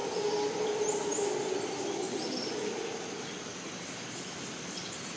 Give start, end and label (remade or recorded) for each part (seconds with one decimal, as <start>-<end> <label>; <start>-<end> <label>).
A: 0.0-5.2 recorded